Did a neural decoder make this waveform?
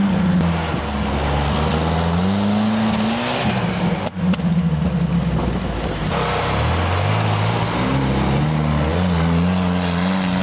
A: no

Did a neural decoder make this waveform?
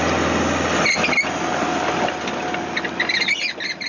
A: no